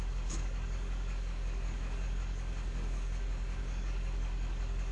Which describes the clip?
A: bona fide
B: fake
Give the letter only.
B